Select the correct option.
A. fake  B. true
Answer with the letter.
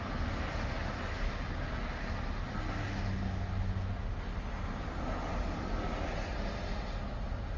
B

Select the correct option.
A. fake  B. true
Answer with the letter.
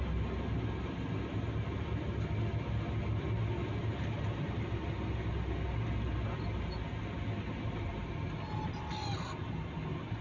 B